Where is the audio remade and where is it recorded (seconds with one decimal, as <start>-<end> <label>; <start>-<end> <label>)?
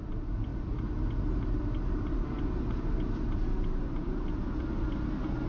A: 0.0-5.5 recorded